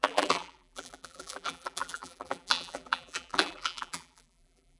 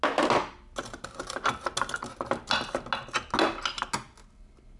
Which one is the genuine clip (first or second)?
second